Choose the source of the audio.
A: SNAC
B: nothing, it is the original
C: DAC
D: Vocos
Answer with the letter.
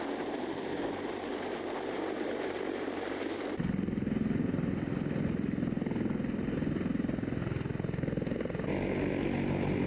B